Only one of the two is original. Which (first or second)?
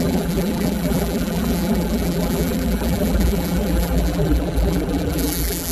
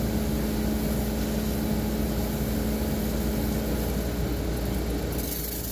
second